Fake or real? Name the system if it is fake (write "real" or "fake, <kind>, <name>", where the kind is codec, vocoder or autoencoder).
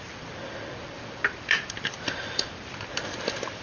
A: fake, vocoder, BigVGAN v2